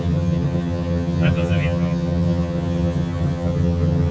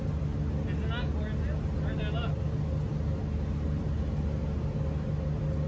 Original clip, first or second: second